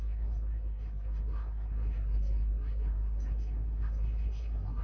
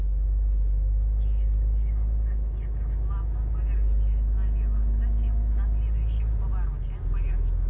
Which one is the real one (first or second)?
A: second